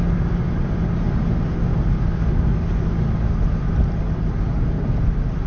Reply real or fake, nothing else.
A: real